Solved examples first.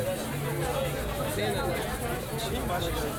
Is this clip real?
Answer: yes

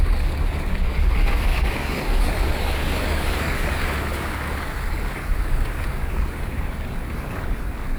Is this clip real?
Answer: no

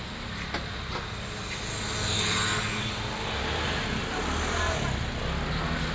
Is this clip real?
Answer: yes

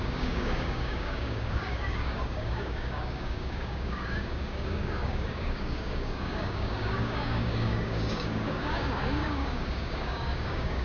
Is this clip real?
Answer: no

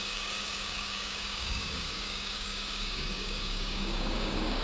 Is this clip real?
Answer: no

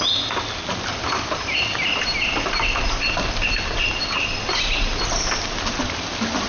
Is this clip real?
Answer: yes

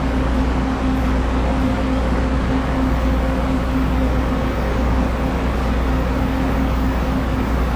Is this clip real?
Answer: no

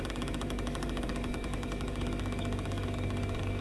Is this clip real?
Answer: no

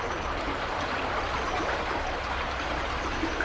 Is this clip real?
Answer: yes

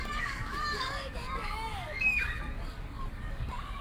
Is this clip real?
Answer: no